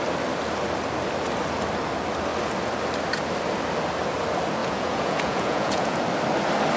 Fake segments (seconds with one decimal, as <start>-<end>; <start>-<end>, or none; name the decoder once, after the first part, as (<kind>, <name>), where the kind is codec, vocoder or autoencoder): 4.6-6.0 (vocoder, Vocos)

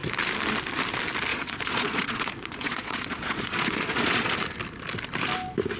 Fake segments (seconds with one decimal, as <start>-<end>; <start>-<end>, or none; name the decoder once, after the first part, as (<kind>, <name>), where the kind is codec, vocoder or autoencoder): 1.3-4.3 (vocoder, Vocos)

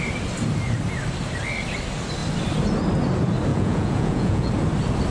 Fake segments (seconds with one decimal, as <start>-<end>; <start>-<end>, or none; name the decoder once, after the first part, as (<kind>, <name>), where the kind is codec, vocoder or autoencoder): 3.5-4.5 (vocoder, Vocos)